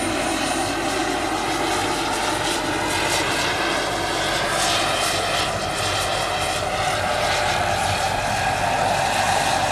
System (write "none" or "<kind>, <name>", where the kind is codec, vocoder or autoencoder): none